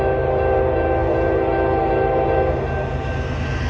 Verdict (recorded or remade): recorded